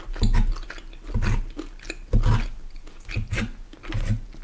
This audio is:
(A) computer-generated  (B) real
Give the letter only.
B